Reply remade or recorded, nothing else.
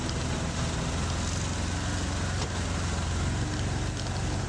recorded